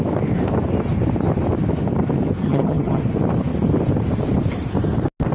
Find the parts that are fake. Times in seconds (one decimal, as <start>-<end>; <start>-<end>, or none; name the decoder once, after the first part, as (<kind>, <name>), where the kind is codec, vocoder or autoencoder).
2.4-3.0 (vocoder, HiFi-GAN)